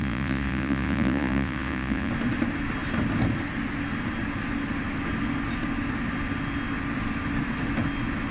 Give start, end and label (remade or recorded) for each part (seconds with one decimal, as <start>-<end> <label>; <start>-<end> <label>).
0.0-2.1 remade; 2.1-8.3 recorded